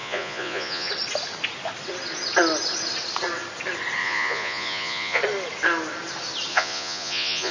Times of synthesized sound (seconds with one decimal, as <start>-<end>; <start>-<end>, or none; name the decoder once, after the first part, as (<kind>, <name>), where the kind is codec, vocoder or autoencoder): 0.0-0.9 (vocoder, Vocos); 4.0-5.2; 6.5-7.5